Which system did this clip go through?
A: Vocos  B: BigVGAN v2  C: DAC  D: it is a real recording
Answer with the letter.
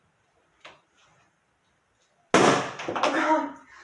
D